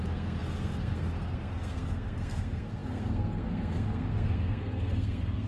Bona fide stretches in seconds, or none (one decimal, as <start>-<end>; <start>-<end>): none